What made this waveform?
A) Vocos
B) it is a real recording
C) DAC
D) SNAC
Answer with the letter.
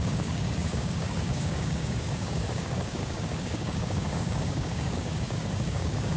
C